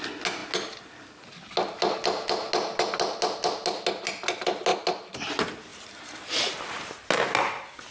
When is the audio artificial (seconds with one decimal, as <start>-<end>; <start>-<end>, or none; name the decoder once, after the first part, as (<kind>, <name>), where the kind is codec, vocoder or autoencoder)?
none